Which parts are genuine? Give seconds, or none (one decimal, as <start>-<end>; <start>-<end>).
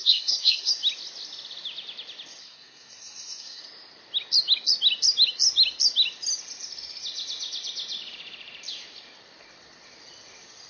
0.7-2.4; 3.6-10.7